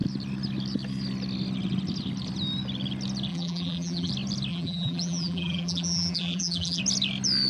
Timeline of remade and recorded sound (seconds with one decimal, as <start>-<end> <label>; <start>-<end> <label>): 0.0-3.3 recorded; 3.3-4.1 remade; 4.1-4.5 recorded; 4.5-6.8 remade; 6.8-7.5 recorded